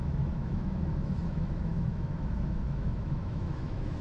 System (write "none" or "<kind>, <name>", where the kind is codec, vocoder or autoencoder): autoencoder, DAC-VAE